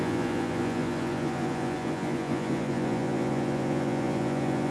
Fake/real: fake